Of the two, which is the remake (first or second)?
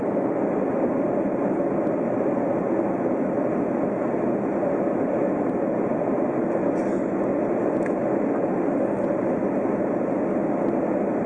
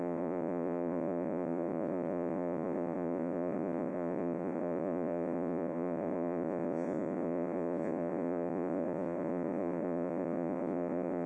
second